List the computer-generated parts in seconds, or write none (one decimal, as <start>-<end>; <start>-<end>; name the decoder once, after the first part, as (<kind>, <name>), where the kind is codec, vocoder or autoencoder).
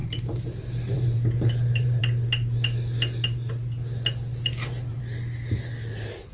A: 0.0-2.0 (vocoder, BigVGAN v2); 4.3-5.0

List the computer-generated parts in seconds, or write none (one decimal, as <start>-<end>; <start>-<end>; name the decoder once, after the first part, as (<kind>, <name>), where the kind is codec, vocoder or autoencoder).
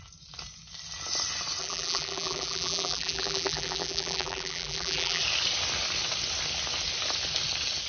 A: 1.6-5.2 (vocoder, BigVGAN v2)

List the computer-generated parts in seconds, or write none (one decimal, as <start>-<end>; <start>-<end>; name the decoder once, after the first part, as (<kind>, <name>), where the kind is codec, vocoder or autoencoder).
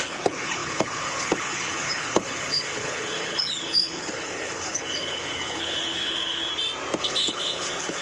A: 0.0-6.5 (codec, HILCodec); 7.0-8.0